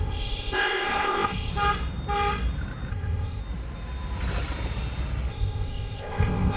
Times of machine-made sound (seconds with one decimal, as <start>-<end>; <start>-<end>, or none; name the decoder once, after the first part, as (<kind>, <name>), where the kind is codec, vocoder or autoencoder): 0.0-1.5 (codec, ZipCodec); 2.9-3.4; 5.3-6.6